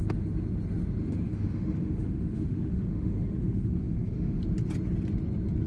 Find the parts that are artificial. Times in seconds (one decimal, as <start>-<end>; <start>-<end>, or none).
1.0-4.4